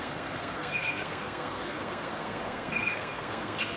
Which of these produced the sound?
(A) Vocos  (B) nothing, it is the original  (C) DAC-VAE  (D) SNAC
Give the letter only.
D